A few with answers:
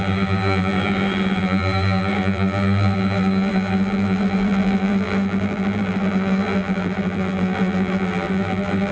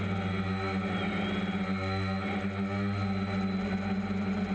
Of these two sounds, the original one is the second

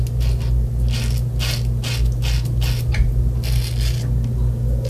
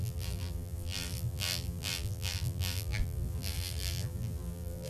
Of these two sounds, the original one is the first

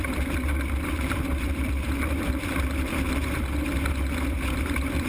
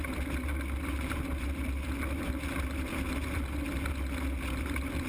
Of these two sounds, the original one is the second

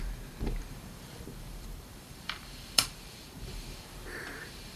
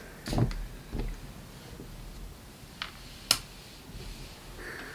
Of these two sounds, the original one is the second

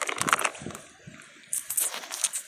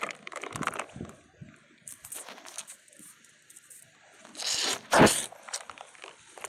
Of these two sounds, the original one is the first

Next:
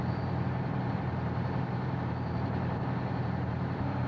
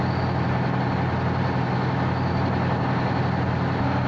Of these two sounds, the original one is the second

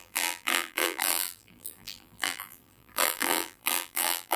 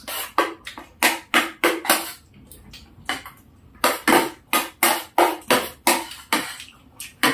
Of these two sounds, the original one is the second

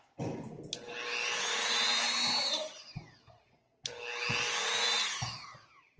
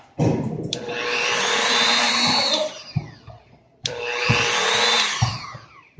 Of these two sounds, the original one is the first